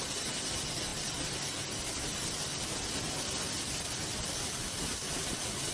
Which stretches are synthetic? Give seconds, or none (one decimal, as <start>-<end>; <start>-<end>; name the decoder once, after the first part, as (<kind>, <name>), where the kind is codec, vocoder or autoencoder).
none